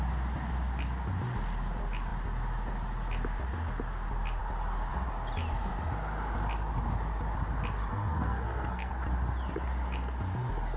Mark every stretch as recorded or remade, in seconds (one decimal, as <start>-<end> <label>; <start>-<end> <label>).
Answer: 0.0-7.9 recorded; 7.9-8.9 remade; 8.9-10.8 recorded